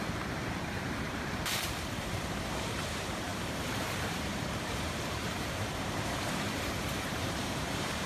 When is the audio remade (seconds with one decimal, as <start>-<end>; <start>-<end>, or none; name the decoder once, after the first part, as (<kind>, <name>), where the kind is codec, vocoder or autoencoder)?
0.0-8.1 (vocoder, BigVGAN v2)